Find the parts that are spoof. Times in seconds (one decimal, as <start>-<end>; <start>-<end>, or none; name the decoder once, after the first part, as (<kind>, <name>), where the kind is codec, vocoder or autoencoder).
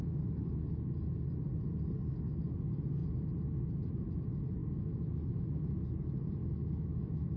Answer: 4.6-5.6 (autoencoder, DAC-VAE); 6.4-7.4